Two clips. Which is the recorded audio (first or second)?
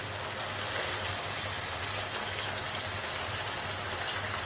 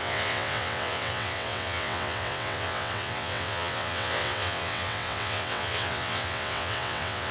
first